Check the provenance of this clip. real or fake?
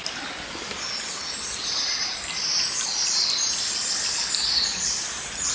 real